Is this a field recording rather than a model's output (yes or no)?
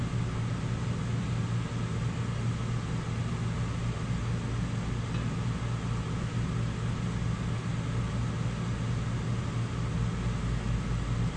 yes